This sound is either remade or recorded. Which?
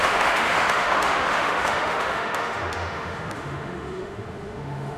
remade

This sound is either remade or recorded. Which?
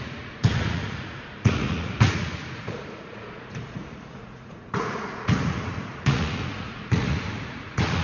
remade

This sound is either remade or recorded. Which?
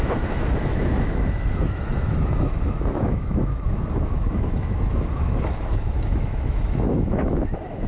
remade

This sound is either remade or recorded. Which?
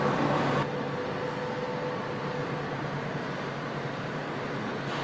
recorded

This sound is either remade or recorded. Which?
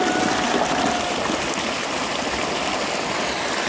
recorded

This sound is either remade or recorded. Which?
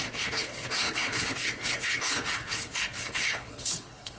remade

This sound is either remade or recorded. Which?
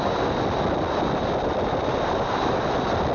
recorded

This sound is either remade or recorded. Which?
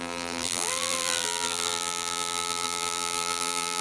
remade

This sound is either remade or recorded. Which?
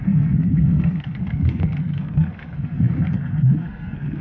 remade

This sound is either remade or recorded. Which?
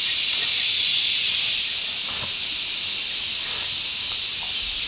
recorded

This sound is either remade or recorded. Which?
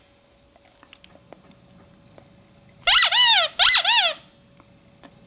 recorded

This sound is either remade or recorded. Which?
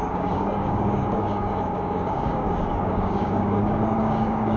remade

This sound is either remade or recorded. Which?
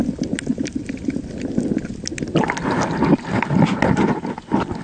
recorded